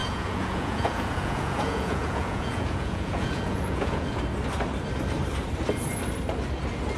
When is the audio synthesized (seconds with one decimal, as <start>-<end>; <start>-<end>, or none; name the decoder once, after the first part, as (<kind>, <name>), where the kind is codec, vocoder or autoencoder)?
0.0-4.2 (vocoder, Vocos)